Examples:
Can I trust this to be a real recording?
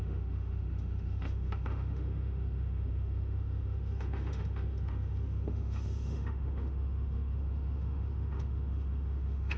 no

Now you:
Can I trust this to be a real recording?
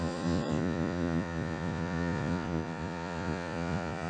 no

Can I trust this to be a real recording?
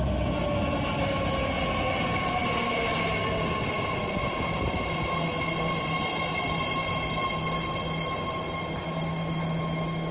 yes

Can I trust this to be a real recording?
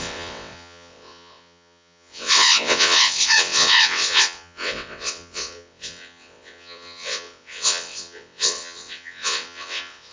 no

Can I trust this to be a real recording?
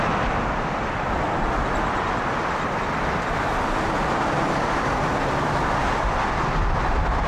yes